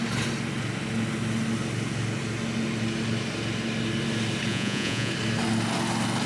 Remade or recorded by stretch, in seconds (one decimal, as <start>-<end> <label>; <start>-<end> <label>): 0.0-4.5 recorded; 4.5-5.1 remade; 5.1-6.3 recorded